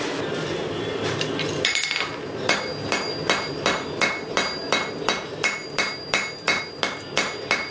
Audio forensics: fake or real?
fake